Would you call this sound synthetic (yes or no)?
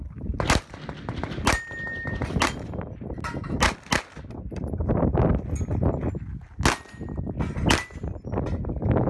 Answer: no